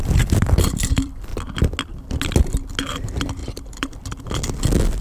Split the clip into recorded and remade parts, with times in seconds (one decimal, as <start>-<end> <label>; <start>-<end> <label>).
0.0-1.3 remade; 1.3-2.8 recorded; 2.8-5.0 remade